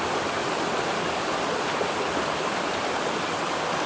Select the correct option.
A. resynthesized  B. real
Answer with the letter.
B